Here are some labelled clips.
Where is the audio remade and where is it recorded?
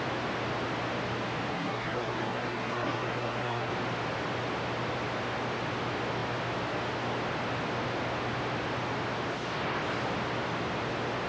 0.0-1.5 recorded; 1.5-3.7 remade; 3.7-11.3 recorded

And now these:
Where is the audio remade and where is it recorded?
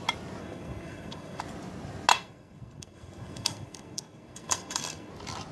0.0-0.4 recorded; 0.4-1.4 remade; 1.4-2.1 recorded; 2.1-5.1 remade; 5.1-5.5 recorded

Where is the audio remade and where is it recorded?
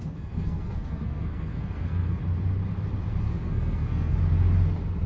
0.0-2.2 remade; 2.2-3.2 recorded; 3.2-4.2 remade; 4.2-5.1 recorded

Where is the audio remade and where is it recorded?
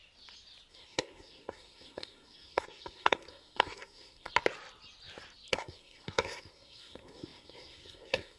0.0-0.7 recorded; 0.7-4.3 remade; 4.3-5.5 recorded; 5.5-8.4 remade